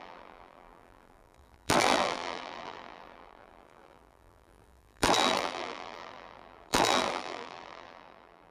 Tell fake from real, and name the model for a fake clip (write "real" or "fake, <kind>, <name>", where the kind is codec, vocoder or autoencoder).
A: fake, vocoder, BigVGAN v2